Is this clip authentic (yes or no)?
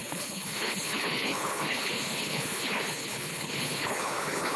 no